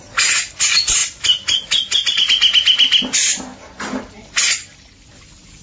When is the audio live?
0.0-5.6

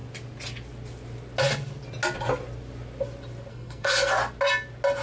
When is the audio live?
0.0-3.5; 4.1-5.0